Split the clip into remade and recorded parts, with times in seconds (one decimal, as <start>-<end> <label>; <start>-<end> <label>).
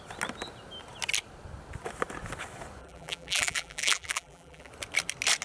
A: 0.0-2.8 recorded; 2.8-4.7 remade; 4.7-5.4 recorded